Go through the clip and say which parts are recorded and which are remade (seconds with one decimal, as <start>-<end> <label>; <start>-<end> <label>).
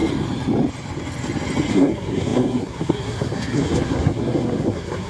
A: 0.0-1.7 recorded; 1.7-5.1 remade